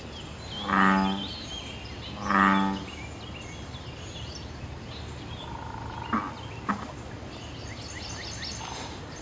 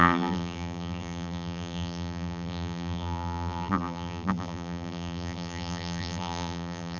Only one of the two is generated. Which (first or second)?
second